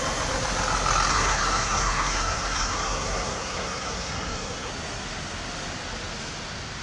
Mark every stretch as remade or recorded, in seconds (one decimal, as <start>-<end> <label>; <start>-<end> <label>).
0.0-1.1 recorded; 1.1-4.7 remade; 4.7-6.8 recorded

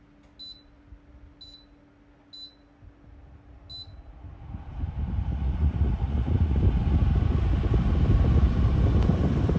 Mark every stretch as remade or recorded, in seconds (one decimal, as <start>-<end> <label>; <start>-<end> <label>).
0.0-5.3 recorded; 5.3-6.6 remade; 6.6-9.6 recorded

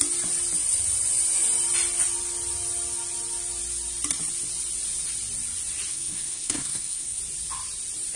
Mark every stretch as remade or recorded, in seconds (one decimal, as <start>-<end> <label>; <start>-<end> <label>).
0.0-5.9 recorded; 5.9-7.2 remade; 7.2-8.2 recorded

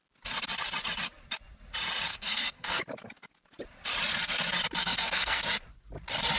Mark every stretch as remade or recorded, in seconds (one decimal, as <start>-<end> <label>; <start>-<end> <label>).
0.0-2.1 recorded; 2.1-2.8 remade; 2.8-4.8 recorded; 4.8-5.4 remade; 5.4-6.4 recorded

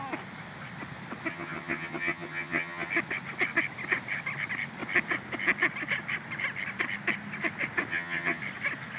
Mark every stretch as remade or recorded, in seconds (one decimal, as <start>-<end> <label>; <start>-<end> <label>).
0.0-1.3 recorded; 1.3-2.9 remade; 2.9-7.9 recorded; 7.9-8.4 remade; 8.4-9.0 recorded

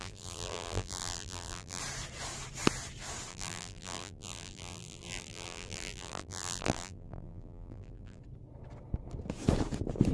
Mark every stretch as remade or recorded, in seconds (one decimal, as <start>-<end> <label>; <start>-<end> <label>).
0.0-1.8 remade; 1.8-3.3 recorded; 3.3-8.2 remade; 8.2-10.1 recorded

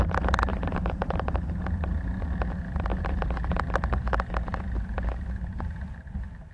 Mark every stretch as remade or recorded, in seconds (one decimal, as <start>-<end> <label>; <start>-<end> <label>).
0.0-0.5 recorded; 0.5-1.3 remade; 1.3-2.9 recorded; 2.9-3.6 remade; 3.6-6.5 recorded

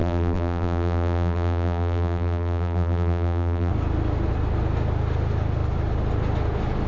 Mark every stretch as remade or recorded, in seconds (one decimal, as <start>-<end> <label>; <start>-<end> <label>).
0.0-3.7 remade; 3.7-6.9 recorded